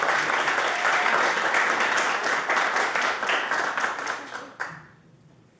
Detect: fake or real real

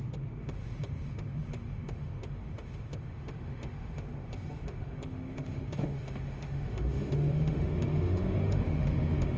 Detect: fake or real fake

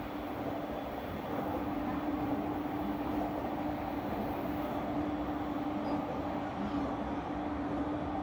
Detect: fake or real real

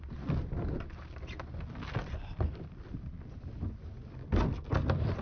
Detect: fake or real real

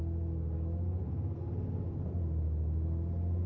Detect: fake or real real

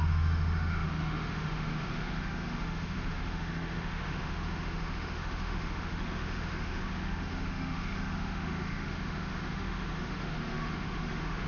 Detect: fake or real fake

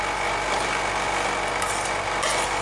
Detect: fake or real real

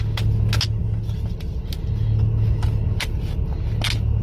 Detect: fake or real real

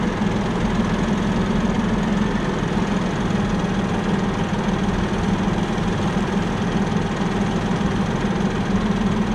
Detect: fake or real real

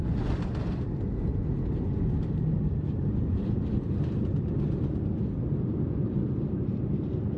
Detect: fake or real real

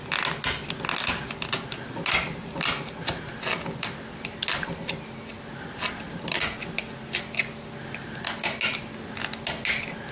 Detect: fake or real real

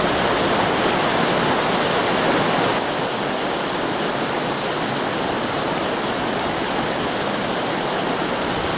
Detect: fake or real real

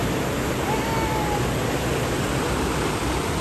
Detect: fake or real real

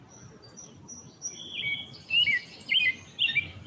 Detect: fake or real real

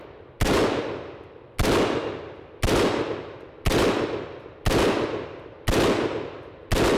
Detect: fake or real real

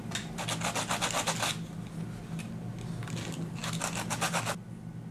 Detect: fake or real real